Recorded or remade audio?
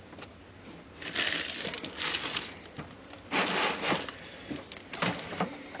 recorded